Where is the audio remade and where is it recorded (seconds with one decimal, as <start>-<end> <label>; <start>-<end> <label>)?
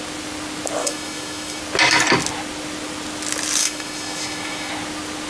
0.0-0.8 recorded; 0.8-1.6 remade; 1.6-3.6 recorded; 3.6-4.7 remade; 4.7-5.3 recorded